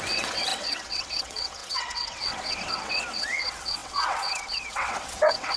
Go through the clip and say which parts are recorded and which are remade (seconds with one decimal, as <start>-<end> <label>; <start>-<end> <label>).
0.0-5.6 remade